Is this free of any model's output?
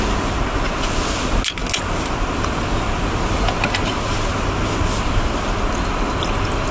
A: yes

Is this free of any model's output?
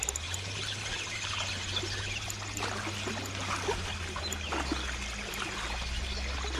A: yes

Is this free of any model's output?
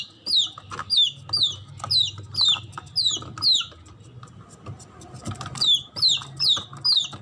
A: yes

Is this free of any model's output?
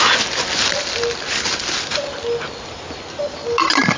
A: yes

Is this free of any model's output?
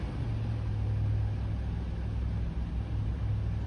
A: yes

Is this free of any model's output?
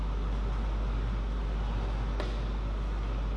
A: yes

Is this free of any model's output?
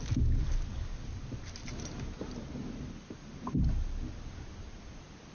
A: yes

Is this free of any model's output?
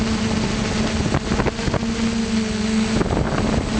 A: yes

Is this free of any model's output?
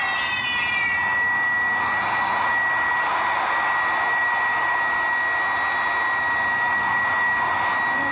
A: yes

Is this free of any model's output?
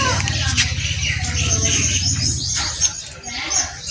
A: yes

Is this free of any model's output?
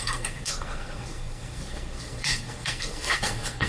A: no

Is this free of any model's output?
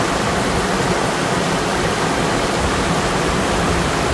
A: yes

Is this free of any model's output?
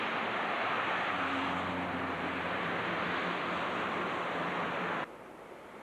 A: yes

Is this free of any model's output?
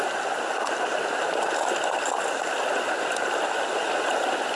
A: yes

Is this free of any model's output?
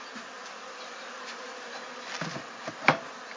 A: yes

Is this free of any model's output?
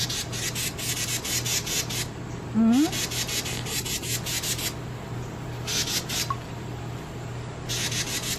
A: yes